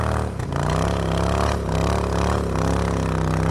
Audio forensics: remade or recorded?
recorded